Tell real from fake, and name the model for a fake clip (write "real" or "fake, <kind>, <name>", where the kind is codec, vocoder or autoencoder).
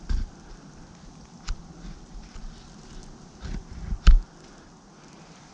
real